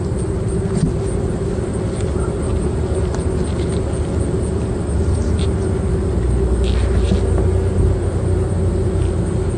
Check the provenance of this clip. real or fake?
real